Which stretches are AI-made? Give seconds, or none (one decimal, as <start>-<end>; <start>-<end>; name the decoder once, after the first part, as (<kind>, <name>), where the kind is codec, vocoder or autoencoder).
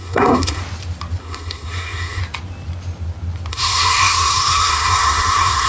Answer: 0.0-0.6 (codec, SNAC); 1.2-2.2; 3.5-5.7